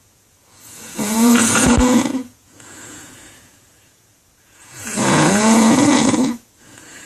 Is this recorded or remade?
remade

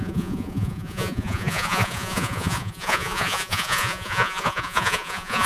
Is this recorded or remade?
remade